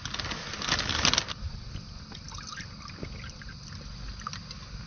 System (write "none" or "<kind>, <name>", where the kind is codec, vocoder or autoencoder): none